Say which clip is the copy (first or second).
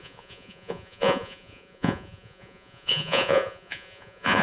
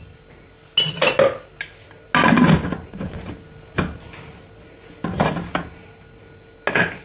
first